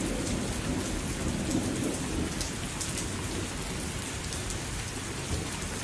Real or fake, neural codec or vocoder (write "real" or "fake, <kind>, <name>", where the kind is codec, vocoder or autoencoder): real